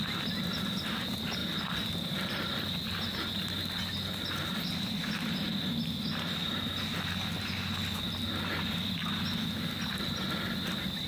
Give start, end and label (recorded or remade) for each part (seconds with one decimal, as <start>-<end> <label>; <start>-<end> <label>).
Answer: 0.0-1.4 recorded; 1.4-2.3 remade; 2.3-7.6 recorded; 7.6-8.6 remade; 8.6-11.1 recorded